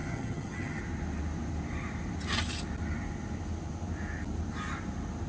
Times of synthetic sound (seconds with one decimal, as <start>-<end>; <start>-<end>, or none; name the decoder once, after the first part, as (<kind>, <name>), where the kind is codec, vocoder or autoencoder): 0.0-0.8 (vocoder, HiFi-GAN)